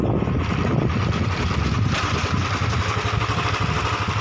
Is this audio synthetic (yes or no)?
no